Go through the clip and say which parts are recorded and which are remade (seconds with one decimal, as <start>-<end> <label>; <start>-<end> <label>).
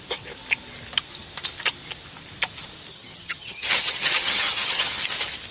0.0-2.9 recorded; 2.9-4.9 remade; 4.9-5.5 recorded